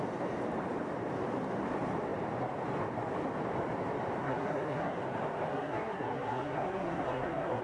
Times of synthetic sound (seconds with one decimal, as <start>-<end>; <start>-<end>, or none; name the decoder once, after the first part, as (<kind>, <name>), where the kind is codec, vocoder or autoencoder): 4.2-5.0 (codec, SNAC); 5.5-7.6